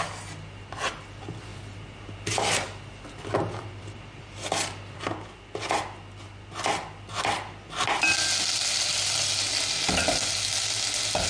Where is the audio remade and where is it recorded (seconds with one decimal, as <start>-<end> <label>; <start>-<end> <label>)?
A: 0.0-11.3 recorded